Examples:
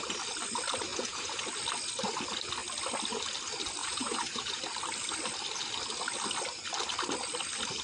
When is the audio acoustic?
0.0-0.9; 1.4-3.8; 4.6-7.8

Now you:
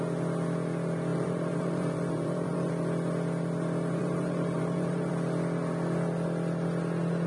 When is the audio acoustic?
0.0-1.1; 2.7-4.0; 5.1-7.3

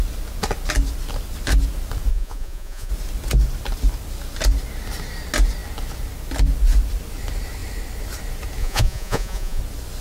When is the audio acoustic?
0.0-2.1; 2.9-8.6; 9.6-10.0

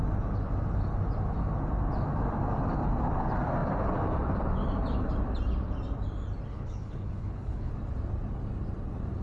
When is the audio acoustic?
0.0-6.5; 7.7-9.2

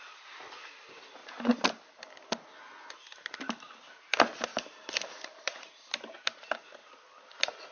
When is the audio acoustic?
0.0-1.2; 2.0-4.5; 5.7-7.7